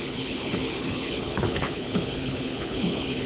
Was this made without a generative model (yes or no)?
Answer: no